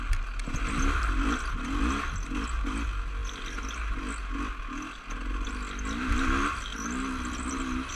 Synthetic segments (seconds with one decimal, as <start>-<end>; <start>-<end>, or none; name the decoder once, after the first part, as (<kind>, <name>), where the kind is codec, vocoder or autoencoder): none